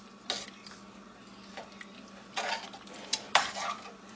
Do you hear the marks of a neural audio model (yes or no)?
no